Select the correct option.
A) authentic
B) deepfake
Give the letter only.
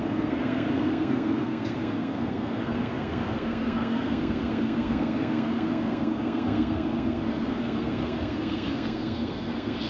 B